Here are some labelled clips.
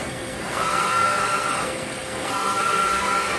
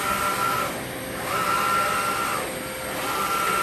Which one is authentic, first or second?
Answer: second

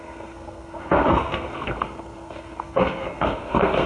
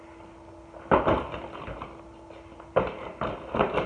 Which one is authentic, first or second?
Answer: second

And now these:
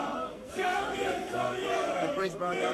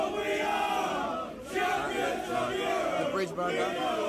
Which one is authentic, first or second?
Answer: second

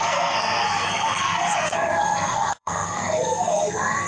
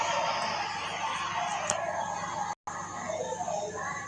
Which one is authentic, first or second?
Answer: second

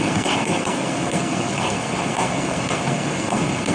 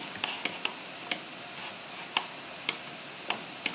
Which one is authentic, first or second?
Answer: second